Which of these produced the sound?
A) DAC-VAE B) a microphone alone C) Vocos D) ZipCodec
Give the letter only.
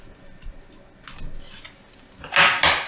B